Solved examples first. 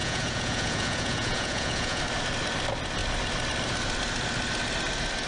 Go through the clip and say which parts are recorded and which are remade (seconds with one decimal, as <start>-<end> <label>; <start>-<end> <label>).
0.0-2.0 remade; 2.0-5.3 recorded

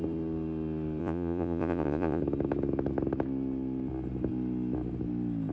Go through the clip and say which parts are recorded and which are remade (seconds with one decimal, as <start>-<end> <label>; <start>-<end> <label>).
0.0-1.0 recorded; 1.0-2.2 remade; 2.2-5.5 recorded

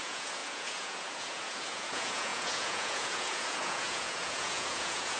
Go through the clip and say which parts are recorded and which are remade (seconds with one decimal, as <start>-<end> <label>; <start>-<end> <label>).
0.0-5.2 remade

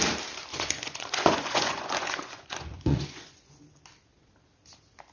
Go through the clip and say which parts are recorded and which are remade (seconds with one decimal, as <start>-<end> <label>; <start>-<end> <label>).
0.0-0.5 recorded; 0.5-3.6 remade; 3.6-5.1 recorded